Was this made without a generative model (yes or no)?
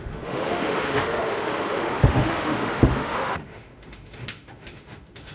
no